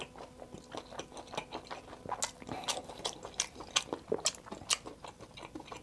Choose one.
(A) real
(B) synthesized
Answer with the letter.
A